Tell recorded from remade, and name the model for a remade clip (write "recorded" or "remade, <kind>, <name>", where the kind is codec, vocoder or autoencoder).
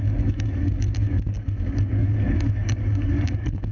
remade, codec, DAC